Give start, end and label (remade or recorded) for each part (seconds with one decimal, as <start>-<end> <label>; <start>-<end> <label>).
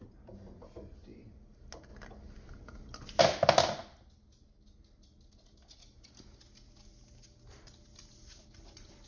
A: 0.0-9.1 recorded